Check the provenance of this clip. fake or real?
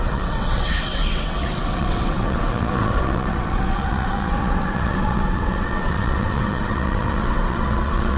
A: fake